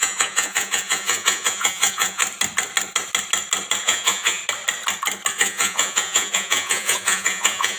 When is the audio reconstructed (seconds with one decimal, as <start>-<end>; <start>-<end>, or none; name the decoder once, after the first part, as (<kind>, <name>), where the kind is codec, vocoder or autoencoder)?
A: 0.0-2.2 (vocoder, Vocos); 3.8-4.4; 5.3-7.8